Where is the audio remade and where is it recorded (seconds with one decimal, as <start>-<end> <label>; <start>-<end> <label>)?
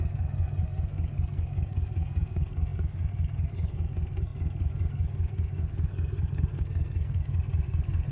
0.0-8.1 remade